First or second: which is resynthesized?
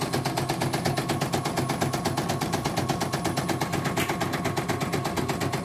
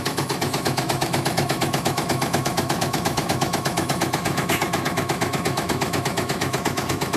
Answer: second